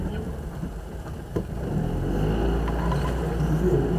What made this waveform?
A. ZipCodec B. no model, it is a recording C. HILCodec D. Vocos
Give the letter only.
B